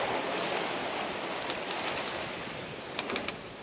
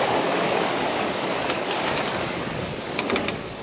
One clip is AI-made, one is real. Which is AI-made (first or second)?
second